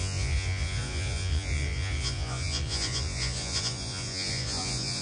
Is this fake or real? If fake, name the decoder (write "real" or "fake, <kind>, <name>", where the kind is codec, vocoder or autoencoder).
fake, vocoder, Vocos